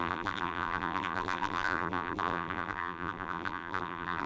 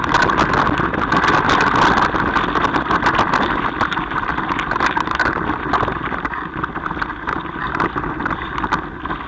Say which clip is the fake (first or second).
first